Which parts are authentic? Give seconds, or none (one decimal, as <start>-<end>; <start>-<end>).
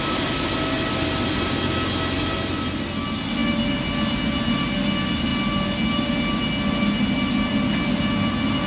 0.0-8.7